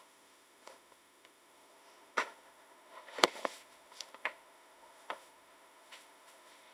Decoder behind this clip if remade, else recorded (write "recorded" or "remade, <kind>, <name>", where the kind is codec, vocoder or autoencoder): remade, autoencoder, DAC-VAE